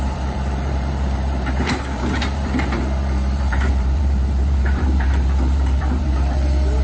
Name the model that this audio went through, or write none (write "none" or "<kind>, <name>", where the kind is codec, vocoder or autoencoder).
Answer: vocoder, BigVGAN v2